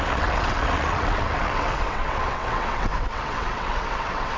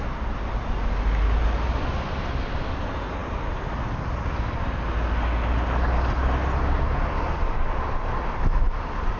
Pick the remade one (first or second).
first